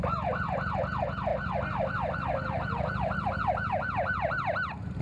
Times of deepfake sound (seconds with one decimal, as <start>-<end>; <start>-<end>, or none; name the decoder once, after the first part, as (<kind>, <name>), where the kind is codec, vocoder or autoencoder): 1.3-3.3 (vocoder, BigVGAN v2)